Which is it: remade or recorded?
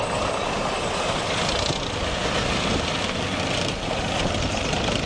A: recorded